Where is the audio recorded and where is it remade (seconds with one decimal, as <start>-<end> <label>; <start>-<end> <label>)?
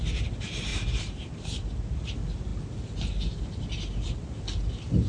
0.0-0.7 recorded; 0.7-2.0 remade; 2.0-5.1 recorded